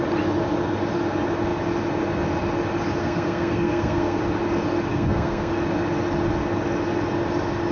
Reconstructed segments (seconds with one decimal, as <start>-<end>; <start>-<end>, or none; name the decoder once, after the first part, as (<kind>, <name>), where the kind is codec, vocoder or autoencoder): 3.0-4.2 (codec, SNAC); 4.9-5.5